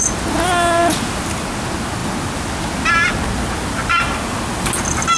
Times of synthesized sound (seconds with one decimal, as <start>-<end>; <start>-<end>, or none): none